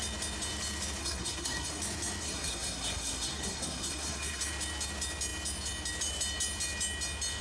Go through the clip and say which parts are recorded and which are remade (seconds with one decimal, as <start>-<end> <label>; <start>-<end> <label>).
0.0-1.0 recorded; 1.0-1.8 remade; 1.8-2.2 recorded; 2.2-4.4 remade; 4.4-7.4 recorded